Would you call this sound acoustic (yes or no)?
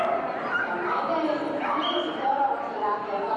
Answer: yes